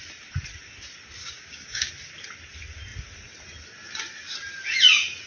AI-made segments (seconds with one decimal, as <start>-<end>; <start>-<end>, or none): 1.2-1.9